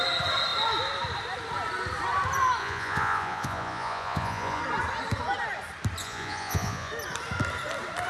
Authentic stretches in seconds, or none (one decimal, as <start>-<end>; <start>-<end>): 0.0-2.6; 4.6-6.0; 6.9-8.1